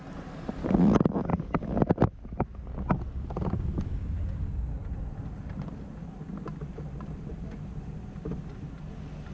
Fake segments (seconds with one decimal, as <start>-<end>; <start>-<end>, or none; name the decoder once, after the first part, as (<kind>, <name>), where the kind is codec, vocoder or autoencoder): none